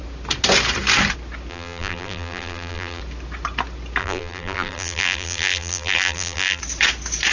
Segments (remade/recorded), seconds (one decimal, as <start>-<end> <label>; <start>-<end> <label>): 0.0-1.5 recorded; 1.5-3.0 remade; 3.0-4.0 recorded; 4.0-6.6 remade; 6.6-7.3 recorded